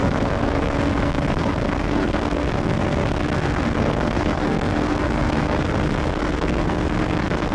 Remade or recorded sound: remade